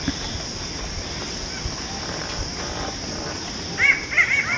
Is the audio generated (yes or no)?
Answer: no